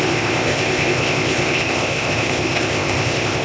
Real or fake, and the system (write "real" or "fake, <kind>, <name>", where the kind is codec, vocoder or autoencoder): fake, codec, ZipCodec